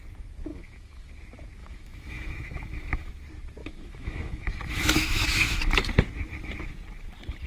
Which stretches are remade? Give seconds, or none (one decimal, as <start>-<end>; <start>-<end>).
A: 0.5-1.1; 1.6-3.1; 3.6-5.9